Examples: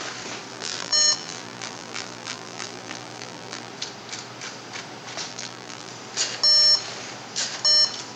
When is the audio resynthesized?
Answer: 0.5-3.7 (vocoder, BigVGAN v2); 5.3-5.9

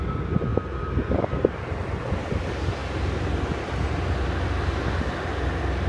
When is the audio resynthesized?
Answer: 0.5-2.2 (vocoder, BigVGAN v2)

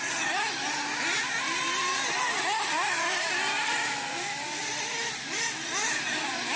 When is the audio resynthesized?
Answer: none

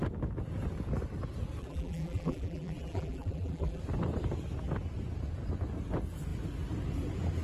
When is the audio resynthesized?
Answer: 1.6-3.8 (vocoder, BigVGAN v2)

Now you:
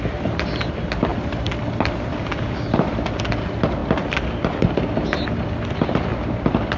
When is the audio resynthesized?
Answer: 1.1-2.9 (vocoder, BigVGAN v2); 6.1-6.8

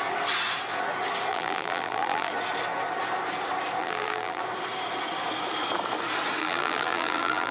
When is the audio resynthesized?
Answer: 1.3-2.3 (vocoder, BigVGAN v2); 3.8-4.4; 6.4-7.5

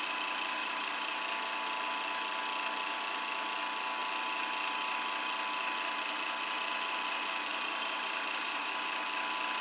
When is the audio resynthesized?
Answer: 0.6-1.2 (vocoder, BigVGAN v2); 7.5-8.7

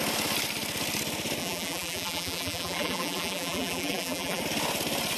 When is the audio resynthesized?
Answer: 1.4-4.4 (vocoder, BigVGAN v2)